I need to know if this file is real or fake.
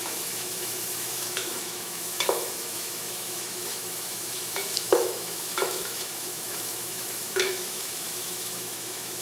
fake